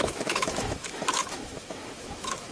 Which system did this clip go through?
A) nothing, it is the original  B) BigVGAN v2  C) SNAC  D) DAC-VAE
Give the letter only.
D